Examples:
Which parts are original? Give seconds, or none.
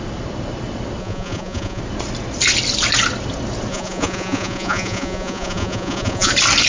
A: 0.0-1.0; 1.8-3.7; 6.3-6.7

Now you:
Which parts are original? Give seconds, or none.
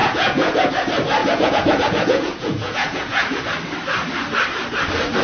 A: 0.7-1.2; 3.4-5.2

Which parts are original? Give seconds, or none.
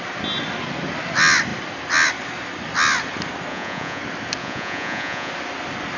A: 0.0-3.5; 4.0-4.4; 5.3-6.0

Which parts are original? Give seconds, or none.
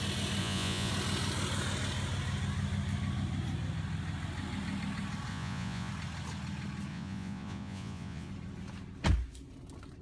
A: 0.0-0.4; 0.9-5.3; 5.9-6.9; 8.3-10.0